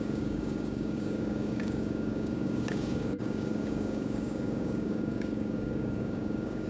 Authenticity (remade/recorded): remade